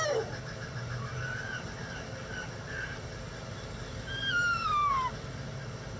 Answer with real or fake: real